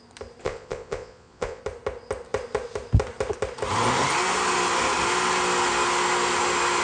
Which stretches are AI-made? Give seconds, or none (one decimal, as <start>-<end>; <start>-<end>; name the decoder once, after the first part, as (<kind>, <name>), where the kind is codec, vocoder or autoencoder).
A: 0.4-1.6 (vocoder, Vocos)